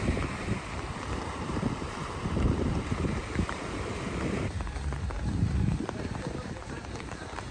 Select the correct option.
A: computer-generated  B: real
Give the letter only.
A